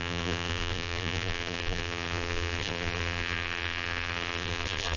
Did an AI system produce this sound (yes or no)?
yes